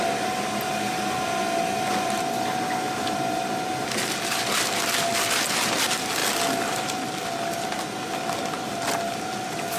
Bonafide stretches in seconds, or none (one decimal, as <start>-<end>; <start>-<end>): 0.0-9.8